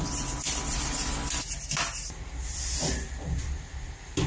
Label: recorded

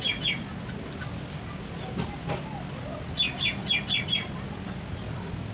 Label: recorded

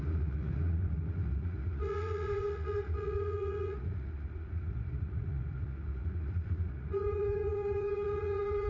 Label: remade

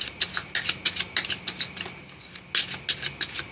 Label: recorded